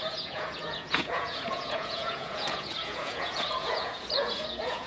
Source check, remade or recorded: remade